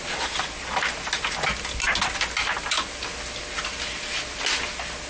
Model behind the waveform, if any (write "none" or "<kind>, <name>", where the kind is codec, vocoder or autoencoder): none